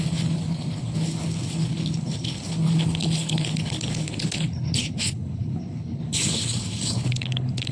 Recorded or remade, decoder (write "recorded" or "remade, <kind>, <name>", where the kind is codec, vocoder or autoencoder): remade, codec, HILCodec